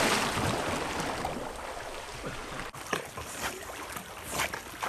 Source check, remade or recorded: recorded